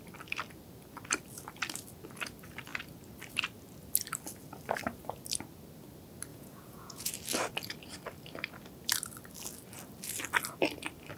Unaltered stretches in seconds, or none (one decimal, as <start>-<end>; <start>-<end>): 0.0-6.3; 7.1-11.2